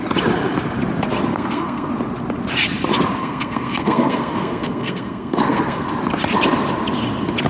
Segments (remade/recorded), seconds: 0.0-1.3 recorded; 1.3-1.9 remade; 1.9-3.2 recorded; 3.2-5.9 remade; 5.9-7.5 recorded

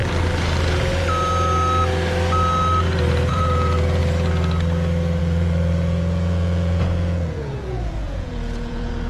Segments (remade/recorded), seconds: 0.0-3.3 recorded; 3.3-4.0 remade; 4.0-5.2 recorded; 5.2-9.1 remade

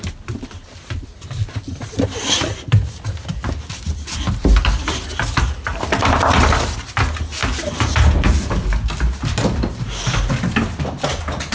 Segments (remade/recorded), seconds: 0.0-5.7 recorded; 5.7-6.2 remade; 6.2-11.5 recorded

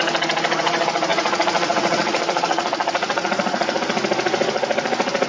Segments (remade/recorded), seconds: 0.0-1.1 recorded; 1.1-3.8 remade; 3.8-5.3 recorded

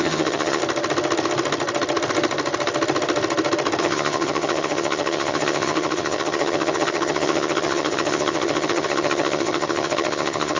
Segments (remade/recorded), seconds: 0.0-0.6 remade; 0.6-3.8 recorded; 3.8-10.6 remade

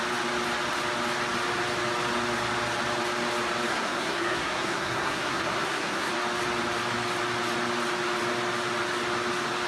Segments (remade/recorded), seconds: 0.0-3.7 recorded; 3.7-6.1 remade; 6.1-9.7 recorded